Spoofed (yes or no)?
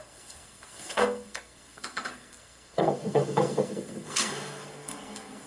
yes